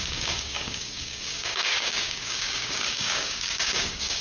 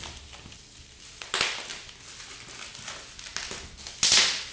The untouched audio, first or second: second